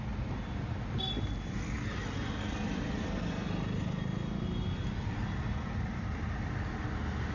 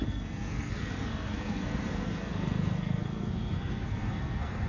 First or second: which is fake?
second